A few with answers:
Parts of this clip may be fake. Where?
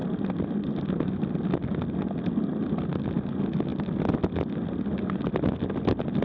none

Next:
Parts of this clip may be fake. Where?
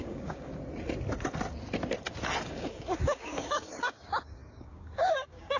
0.0-0.5; 2.4-5.6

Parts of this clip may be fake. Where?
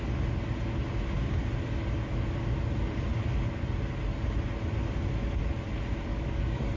6.1-6.8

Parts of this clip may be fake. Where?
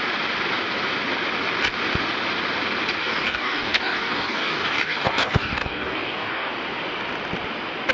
3.0-6.5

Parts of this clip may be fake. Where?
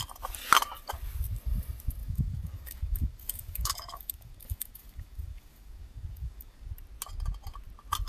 2.0-6.7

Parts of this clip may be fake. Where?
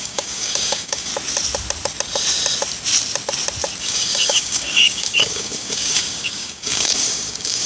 0.0-1.1; 3.8-7.7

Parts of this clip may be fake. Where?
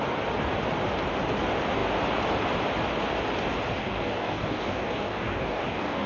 3.8-6.1